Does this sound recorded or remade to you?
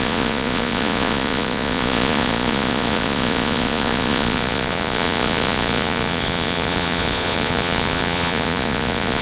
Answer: remade